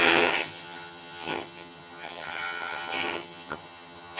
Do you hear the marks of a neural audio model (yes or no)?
yes